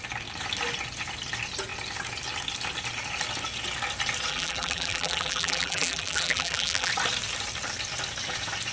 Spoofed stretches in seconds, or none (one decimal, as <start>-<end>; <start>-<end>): 4.3-6.9